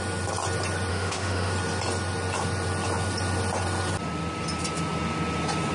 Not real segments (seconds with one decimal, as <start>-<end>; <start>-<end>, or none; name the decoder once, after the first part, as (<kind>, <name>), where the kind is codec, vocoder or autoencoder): 0.9-1.5 (autoencoder, DAC-VAE)